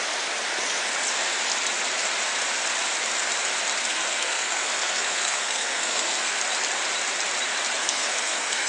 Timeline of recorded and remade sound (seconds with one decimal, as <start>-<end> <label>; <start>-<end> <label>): 0.0-3.8 recorded; 3.8-6.4 remade; 6.4-7.8 recorded; 7.8-8.7 remade